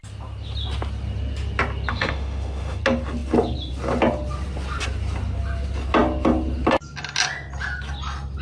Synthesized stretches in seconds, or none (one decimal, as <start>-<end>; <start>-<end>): 1.9-2.8